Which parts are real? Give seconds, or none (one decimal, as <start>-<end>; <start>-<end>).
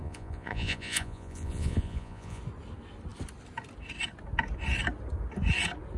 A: 2.4-6.0